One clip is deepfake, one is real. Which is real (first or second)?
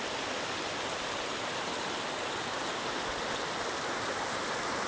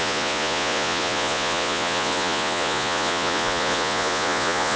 first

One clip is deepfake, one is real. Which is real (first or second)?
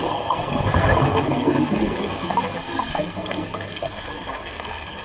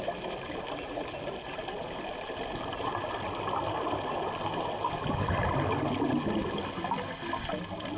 second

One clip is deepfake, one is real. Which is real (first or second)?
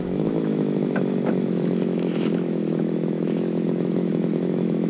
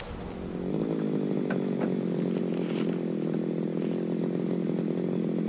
second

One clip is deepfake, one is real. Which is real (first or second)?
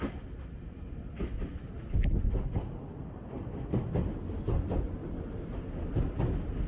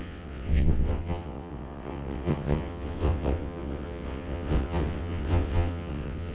first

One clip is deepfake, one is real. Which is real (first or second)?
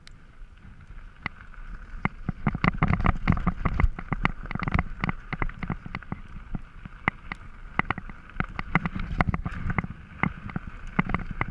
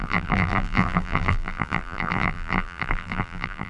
first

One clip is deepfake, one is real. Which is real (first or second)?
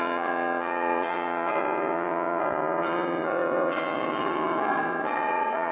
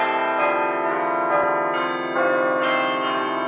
second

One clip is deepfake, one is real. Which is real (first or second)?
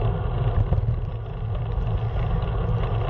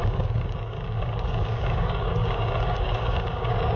first